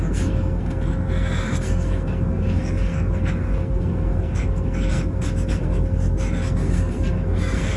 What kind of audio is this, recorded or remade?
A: remade